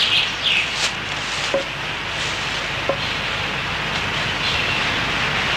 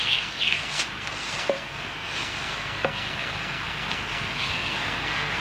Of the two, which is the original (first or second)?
first